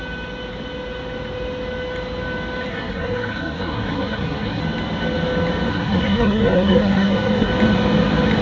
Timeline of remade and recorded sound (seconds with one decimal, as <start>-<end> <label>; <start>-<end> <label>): 0.0-2.7 recorded; 2.7-4.6 remade; 4.6-5.7 recorded; 5.7-7.5 remade; 7.5-8.4 recorded